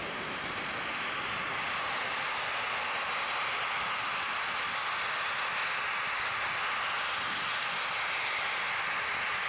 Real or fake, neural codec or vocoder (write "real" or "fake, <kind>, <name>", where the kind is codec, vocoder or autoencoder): real